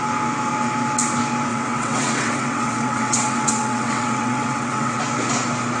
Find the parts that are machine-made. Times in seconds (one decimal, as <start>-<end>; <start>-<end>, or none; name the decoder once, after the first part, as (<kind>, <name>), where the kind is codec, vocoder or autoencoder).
1.5-5.0 (vocoder, WaveNeXt)